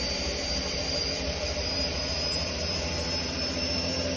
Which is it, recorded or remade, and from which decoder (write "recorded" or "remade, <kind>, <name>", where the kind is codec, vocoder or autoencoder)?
remade, vocoder, BigVGAN v2